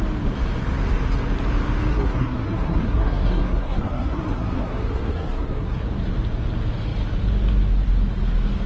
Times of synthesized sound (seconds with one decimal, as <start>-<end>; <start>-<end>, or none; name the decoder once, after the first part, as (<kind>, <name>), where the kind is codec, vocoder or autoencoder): 1.9-5.8 (codec, SNAC)